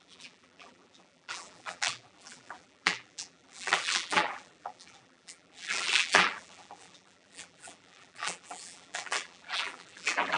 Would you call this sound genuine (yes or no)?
no